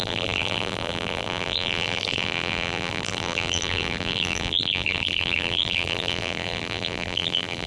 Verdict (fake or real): fake